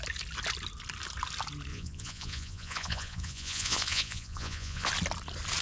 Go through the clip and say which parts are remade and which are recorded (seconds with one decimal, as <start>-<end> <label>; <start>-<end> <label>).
0.0-1.7 recorded; 1.7-4.9 remade; 4.9-5.6 recorded